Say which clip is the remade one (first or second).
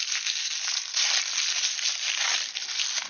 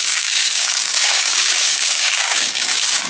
second